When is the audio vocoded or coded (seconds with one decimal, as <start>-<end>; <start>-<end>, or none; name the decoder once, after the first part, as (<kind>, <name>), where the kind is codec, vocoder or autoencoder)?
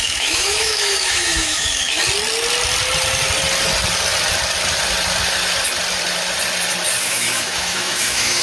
0.0-2.0 (autoencoder, DAC-VAE); 7.0-8.4